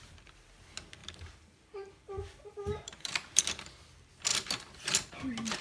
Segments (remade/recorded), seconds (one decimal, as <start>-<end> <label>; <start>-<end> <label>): 0.0-1.0 recorded; 1.0-3.4 remade; 3.4-4.3 recorded; 4.3-5.6 remade